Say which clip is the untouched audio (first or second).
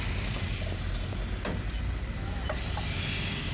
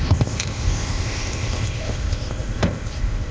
first